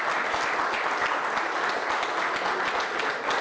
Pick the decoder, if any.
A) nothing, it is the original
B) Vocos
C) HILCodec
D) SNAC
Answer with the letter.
A